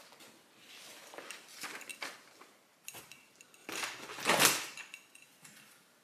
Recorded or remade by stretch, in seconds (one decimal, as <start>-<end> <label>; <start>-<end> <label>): 0.0-6.0 recorded